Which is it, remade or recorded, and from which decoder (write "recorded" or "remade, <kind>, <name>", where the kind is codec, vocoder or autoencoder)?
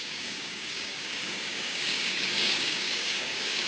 remade, codec, DAC